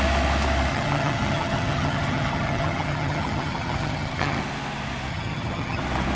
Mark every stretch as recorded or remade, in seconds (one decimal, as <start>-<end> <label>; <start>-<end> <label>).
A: 0.0-0.7 recorded; 0.7-4.4 remade; 4.4-5.1 recorded; 5.1-5.8 remade; 5.8-6.2 recorded

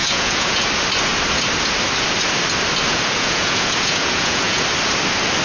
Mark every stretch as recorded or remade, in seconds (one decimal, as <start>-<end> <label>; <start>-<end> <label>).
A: 0.0-0.7 remade; 0.7-2.9 recorded; 2.9-4.6 remade; 4.6-5.4 recorded